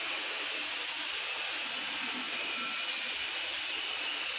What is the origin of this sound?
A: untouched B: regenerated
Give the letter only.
A